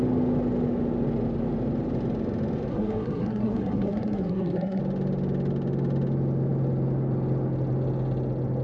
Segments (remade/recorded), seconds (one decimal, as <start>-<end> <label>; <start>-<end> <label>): 0.0-2.7 recorded; 2.7-4.8 remade; 4.8-8.6 recorded